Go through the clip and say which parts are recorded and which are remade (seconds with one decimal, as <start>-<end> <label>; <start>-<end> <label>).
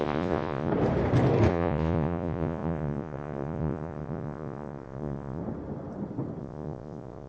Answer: 0.0-0.7 remade; 0.7-1.5 recorded; 1.5-5.4 remade; 5.4-6.4 recorded; 6.4-7.3 remade